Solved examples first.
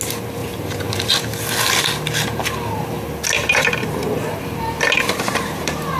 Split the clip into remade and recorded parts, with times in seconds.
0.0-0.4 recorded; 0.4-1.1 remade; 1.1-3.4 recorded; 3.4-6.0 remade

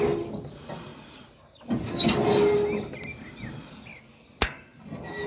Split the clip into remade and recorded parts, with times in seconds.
0.0-5.3 recorded

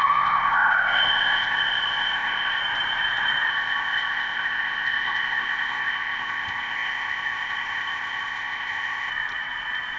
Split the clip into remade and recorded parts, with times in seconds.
0.0-2.6 remade; 2.6-3.5 recorded; 3.5-9.1 remade; 9.1-10.0 recorded

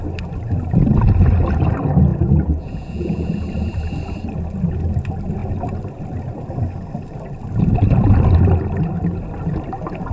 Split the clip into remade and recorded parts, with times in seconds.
0.0-2.1 recorded; 2.1-3.3 remade; 3.3-10.1 recorded

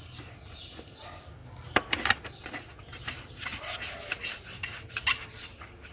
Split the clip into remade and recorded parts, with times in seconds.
0.0-5.9 recorded

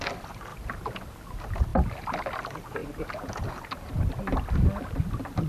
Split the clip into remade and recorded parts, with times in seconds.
0.0-5.5 recorded

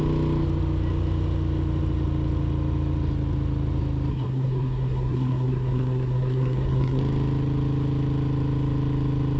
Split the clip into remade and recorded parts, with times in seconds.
0.0-4.1 recorded; 4.1-7.0 remade; 7.0-9.4 recorded

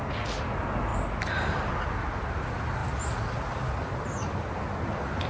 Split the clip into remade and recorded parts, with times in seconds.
0.0-0.9 recorded; 0.9-1.7 remade; 1.7-5.3 recorded